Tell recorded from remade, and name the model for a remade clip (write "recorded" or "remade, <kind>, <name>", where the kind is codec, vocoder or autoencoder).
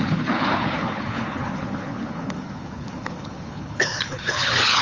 remade, codec, HILCodec